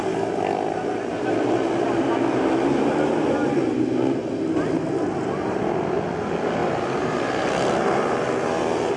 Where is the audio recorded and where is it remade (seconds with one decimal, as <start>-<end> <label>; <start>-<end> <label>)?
0.0-9.0 recorded